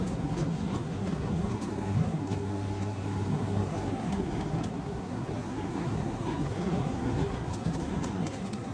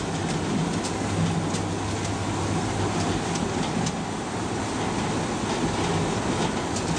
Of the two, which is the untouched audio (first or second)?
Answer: second